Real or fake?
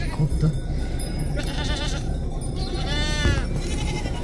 fake